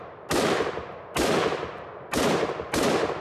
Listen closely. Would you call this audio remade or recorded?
recorded